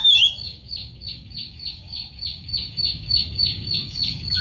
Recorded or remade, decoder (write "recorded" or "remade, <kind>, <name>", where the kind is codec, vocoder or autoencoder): remade, codec, DAC